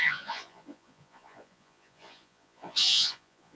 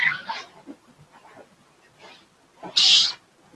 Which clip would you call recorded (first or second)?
second